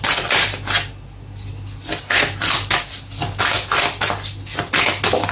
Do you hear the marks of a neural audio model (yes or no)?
no